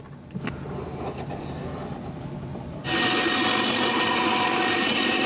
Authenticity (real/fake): real